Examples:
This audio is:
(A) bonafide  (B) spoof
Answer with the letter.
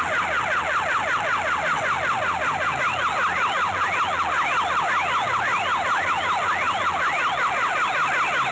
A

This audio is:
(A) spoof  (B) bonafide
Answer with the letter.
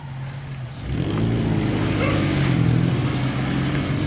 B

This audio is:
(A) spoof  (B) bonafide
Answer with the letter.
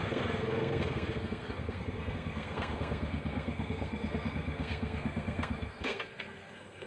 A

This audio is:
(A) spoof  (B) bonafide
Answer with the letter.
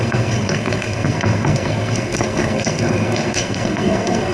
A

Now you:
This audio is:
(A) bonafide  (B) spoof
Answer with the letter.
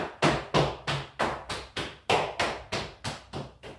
A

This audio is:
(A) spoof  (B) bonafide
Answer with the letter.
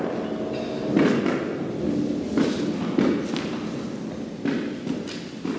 B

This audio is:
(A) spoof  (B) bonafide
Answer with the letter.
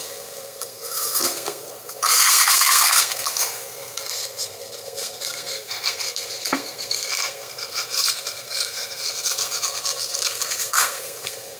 A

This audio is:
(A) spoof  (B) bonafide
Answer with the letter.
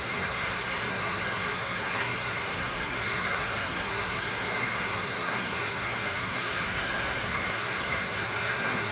A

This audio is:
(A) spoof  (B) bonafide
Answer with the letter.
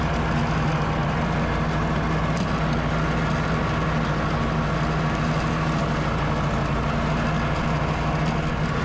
B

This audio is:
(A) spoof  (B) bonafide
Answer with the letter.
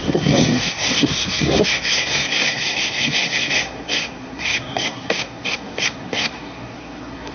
A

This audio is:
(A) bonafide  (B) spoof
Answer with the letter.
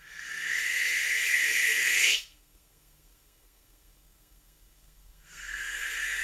B